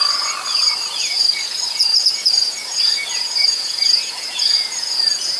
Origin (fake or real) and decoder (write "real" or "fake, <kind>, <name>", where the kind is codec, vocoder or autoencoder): fake, vocoder, Vocos